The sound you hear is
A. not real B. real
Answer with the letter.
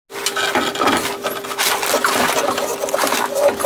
B